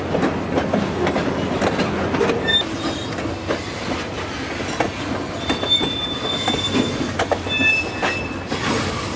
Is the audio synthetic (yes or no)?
no